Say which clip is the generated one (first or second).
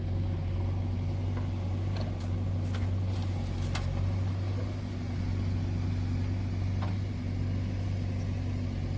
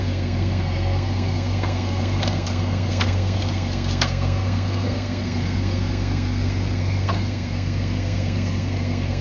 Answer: second